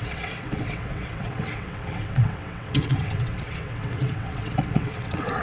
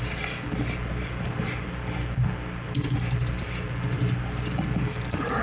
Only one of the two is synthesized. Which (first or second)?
first